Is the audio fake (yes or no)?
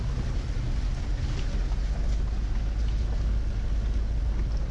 no